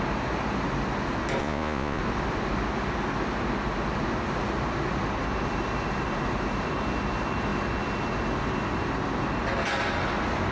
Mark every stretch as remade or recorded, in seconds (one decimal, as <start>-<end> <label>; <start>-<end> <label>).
0.0-1.4 recorded; 1.4-2.0 remade; 2.0-10.5 recorded